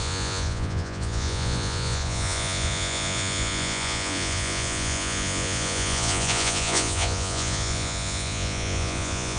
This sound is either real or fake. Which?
fake